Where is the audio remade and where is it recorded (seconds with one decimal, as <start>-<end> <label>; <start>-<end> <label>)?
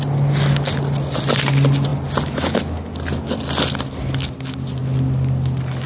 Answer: 0.0-5.9 recorded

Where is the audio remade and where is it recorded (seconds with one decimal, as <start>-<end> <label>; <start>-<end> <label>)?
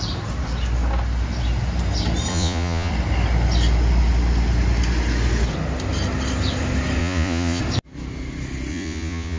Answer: 0.0-2.3 recorded; 2.3-2.9 remade; 2.9-7.0 recorded; 7.0-7.6 remade; 7.6-8.7 recorded; 8.7-9.4 remade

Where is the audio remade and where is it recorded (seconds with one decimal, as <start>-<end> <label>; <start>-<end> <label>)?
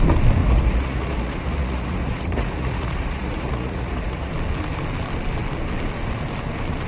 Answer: 0.0-0.4 recorded; 0.4-4.3 remade; 4.3-6.9 recorded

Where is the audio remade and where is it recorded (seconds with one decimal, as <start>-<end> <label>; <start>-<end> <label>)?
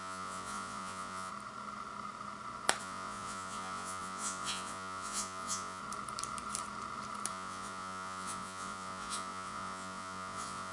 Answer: 0.0-1.3 remade; 1.3-2.8 recorded; 2.8-5.8 remade; 5.8-7.3 recorded; 7.3-10.7 remade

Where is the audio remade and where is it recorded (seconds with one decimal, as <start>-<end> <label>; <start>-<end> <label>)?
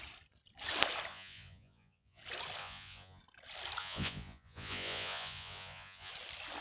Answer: 0.0-1.1 recorded; 1.1-2.2 remade; 2.2-2.6 recorded; 2.6-3.2 remade; 3.2-3.8 recorded; 3.8-6.1 remade; 6.1-6.6 recorded